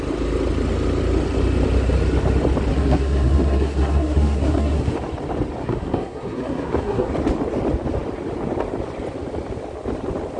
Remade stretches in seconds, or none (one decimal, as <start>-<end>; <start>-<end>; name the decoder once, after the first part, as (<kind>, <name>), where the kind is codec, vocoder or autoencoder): 2.7-4.9 (codec, SNAC); 5.6-7.1